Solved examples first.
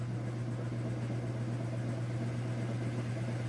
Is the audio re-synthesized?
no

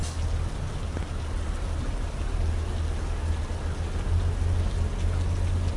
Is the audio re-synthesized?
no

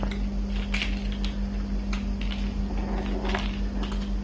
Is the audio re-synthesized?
no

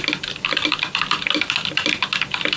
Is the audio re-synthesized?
no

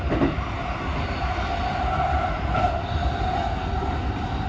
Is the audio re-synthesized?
no